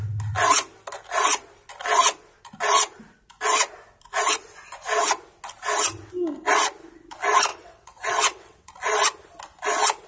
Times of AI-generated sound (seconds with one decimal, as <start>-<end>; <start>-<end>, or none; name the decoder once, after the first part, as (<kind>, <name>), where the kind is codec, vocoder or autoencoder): 7.5-8.7 (vocoder, WaveNeXt)